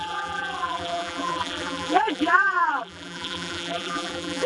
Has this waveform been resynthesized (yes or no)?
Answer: yes